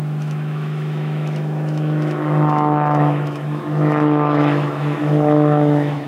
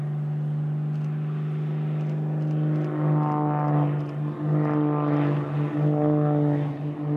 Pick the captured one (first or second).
second